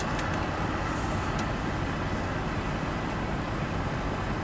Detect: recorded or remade recorded